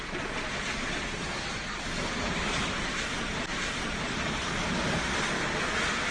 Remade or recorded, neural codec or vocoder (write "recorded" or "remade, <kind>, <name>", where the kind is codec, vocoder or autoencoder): recorded